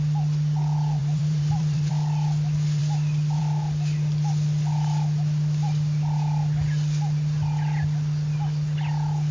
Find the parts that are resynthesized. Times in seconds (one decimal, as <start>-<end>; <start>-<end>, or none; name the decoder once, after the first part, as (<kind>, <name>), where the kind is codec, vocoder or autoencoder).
1.0-1.9 (vocoder, BigVGAN v2)